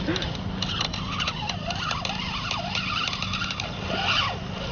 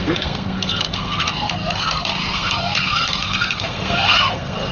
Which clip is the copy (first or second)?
second